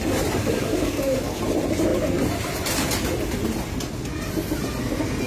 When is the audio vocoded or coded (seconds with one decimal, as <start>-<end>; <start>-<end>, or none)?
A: 0.4-1.4